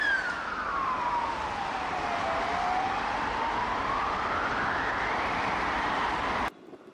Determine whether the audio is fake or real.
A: fake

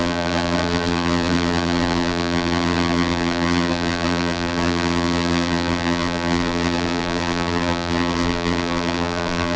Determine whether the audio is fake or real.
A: fake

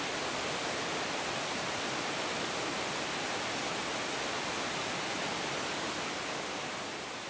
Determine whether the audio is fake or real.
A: real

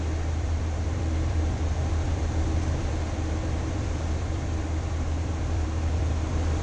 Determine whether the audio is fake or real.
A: fake